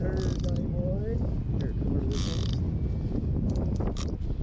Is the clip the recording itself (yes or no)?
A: yes